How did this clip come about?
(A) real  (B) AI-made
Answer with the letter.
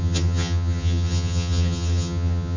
B